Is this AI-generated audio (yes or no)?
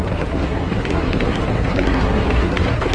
yes